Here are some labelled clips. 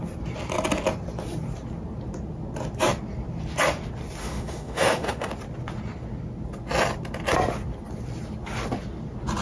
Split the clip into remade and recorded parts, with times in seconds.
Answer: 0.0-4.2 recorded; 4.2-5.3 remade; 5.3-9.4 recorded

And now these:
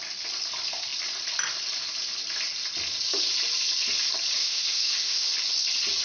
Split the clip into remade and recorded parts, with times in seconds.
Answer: 0.0-4.4 recorded; 4.4-5.3 remade; 5.3-6.0 recorded